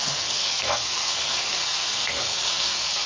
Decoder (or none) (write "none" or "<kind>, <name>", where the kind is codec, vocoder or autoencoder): codec, SNAC